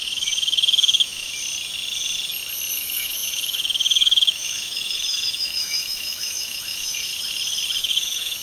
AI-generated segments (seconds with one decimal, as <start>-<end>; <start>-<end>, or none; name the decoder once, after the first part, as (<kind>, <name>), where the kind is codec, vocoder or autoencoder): 0.0-1.3 (autoencoder, DAC-VAE); 2.7-7.1; 7.8-8.4